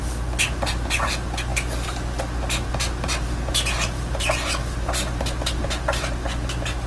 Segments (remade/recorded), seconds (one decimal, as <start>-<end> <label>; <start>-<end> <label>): 0.0-6.9 recorded